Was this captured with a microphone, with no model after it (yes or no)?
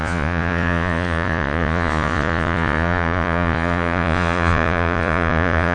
no